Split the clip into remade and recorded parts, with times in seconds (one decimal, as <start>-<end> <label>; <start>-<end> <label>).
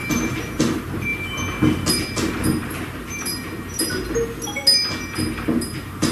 0.0-6.1 recorded